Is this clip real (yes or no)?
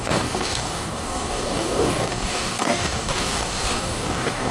no